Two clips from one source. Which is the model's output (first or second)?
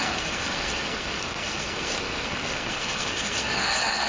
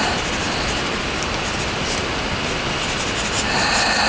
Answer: first